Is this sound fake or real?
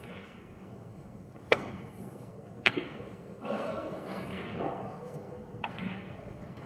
fake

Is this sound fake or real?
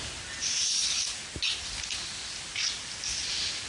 real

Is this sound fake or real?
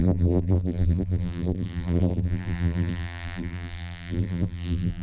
fake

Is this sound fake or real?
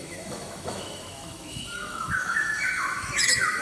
fake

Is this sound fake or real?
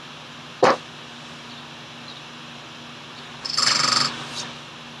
real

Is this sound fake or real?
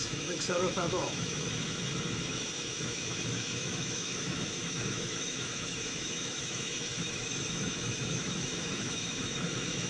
fake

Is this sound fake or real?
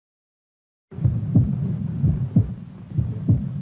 real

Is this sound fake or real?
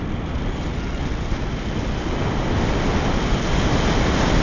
real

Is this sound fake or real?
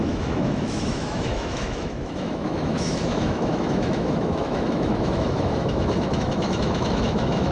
fake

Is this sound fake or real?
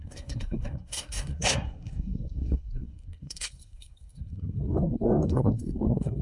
fake